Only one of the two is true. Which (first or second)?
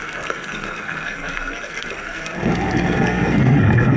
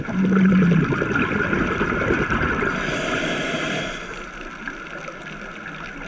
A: second